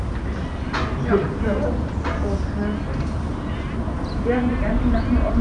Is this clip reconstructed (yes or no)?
no